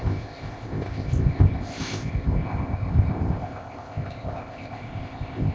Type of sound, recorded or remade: remade